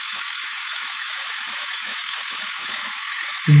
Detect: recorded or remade remade